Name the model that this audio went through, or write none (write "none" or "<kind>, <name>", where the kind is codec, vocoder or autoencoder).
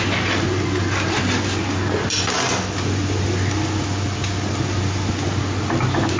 none